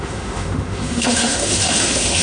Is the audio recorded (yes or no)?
no